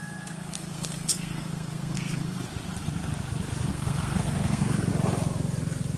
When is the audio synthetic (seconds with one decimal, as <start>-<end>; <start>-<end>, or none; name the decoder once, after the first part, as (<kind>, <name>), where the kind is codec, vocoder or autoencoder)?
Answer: 0.0-2.4 (codec, SNAC); 3.7-4.9